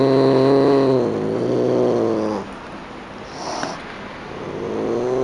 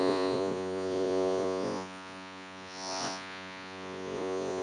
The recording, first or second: first